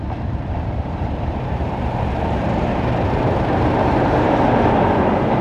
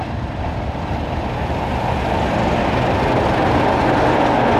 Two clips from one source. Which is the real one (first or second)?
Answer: second